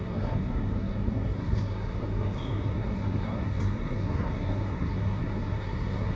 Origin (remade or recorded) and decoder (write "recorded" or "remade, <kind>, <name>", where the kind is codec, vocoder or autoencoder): remade, codec, SNAC